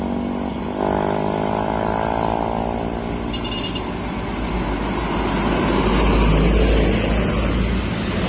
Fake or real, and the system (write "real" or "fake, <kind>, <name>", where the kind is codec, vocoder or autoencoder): real